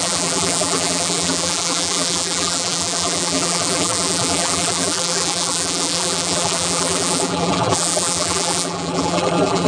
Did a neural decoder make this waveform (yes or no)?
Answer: yes